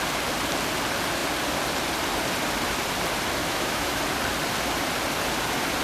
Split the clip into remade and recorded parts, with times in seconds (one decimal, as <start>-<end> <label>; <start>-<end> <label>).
0.0-3.4 recorded; 3.4-4.0 remade; 4.0-5.8 recorded